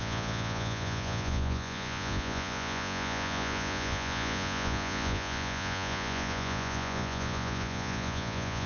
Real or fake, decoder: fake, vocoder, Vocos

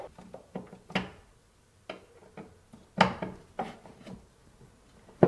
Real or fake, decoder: real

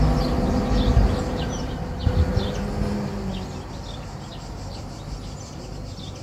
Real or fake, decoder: real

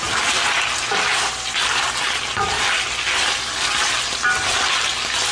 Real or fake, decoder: real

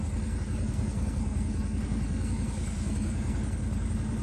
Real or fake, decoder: fake, codec, SNAC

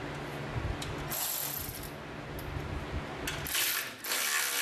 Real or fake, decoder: real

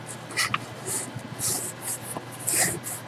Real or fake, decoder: real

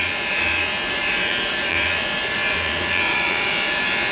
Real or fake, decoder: fake, vocoder, Vocos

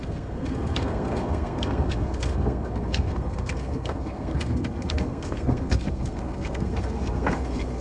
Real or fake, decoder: fake, codec, SNAC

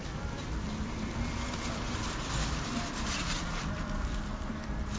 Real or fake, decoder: fake, vocoder, BigVGAN v2